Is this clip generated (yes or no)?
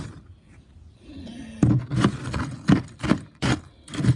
no